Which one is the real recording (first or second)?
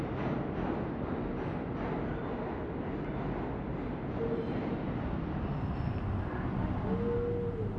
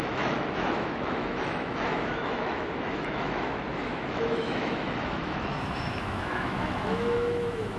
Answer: first